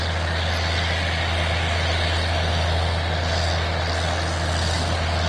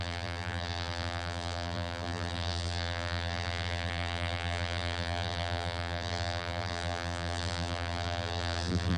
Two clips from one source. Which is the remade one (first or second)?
second